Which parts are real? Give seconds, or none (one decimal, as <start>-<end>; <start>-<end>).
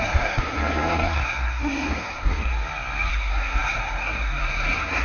2.5-3.1